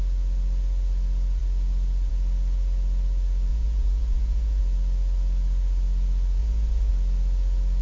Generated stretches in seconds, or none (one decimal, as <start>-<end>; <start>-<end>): 3.5-4.6; 6.4-6.9